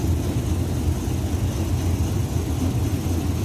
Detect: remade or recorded recorded